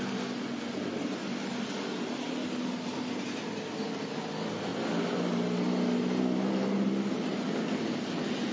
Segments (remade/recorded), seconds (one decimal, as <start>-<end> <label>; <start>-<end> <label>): 0.0-8.5 recorded